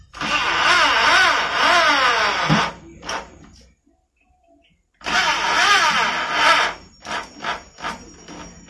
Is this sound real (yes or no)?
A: yes